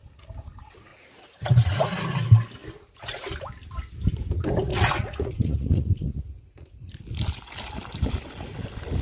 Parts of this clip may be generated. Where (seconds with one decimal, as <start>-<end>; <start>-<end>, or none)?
0.9-2.0; 4.7-6.9

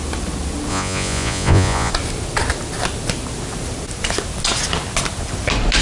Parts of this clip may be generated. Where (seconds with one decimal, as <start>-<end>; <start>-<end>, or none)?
0.7-1.9

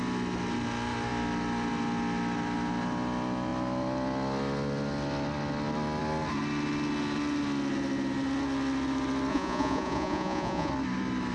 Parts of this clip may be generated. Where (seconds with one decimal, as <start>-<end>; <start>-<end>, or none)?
9.3-10.7

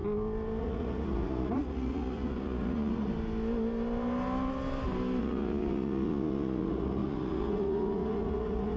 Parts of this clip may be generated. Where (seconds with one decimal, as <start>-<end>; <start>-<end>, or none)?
0.6-3.1; 5.2-8.8